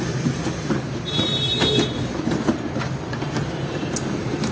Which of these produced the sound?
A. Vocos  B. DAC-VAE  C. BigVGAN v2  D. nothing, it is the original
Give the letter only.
C